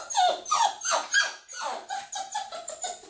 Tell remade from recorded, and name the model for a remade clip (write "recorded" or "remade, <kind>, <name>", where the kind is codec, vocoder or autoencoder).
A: recorded